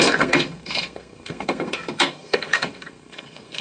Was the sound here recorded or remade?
remade